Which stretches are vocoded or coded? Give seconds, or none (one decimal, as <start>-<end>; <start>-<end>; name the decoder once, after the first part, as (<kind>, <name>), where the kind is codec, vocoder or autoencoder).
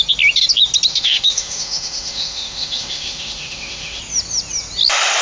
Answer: 0.9-4.0 (autoencoder, DAC-VAE)